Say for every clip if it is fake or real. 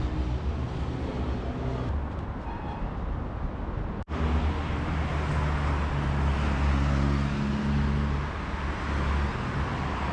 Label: real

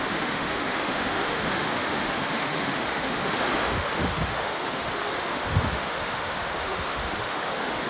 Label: fake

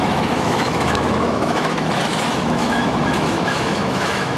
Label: fake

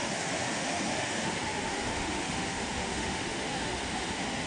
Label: fake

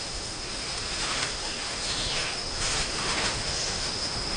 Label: fake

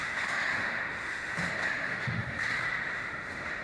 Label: fake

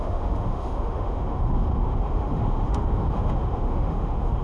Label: fake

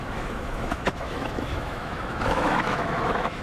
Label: fake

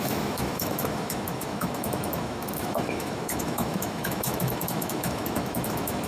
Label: fake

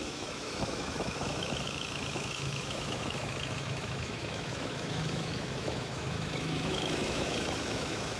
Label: fake